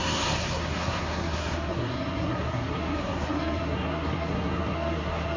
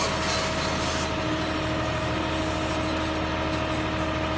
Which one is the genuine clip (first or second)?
second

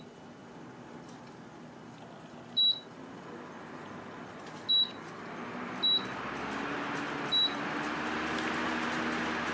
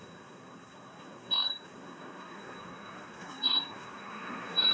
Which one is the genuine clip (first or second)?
first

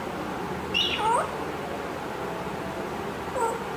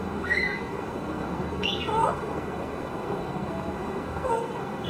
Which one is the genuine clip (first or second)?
first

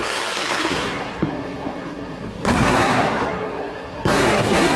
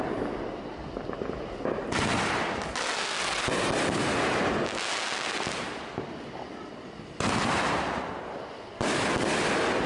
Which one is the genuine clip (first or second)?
second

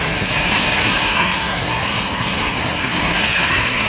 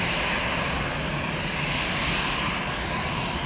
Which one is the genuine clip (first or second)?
second